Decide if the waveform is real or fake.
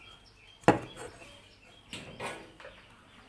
real